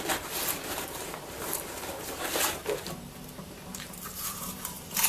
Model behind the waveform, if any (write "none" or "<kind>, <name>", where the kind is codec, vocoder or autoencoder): vocoder, BigVGAN v2